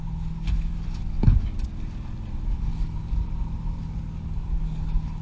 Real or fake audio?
real